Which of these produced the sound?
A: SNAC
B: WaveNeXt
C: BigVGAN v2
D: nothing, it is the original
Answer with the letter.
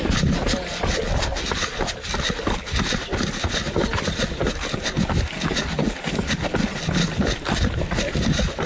D